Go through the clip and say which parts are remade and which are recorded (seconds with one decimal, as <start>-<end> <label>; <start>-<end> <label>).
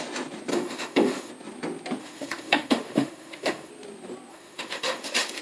0.0-0.5 recorded; 0.5-1.3 remade; 1.3-2.0 recorded; 2.0-3.7 remade; 3.7-4.3 recorded; 4.3-5.4 remade